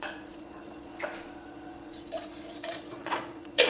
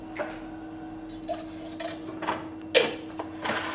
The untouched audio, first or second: second